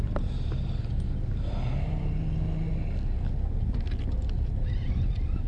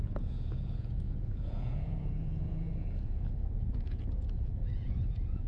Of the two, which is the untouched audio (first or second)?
first